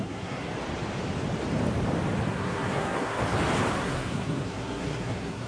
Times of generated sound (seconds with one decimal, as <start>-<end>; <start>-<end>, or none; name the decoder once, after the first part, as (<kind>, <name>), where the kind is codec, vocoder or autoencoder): 0.0-0.5 (codec, SNAC); 2.3-3.2; 3.7-5.5